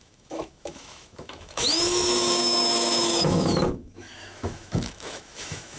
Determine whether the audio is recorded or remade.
remade